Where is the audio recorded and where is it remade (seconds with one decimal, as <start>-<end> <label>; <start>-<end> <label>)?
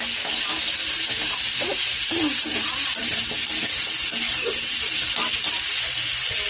0.0-0.8 recorded; 0.8-3.3 remade; 3.3-6.5 recorded